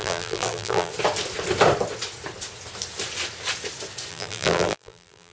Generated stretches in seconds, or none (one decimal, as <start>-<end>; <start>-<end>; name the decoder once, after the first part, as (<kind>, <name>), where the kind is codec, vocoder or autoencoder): 0.0-0.9 (vocoder, BigVGAN v2); 4.1-5.3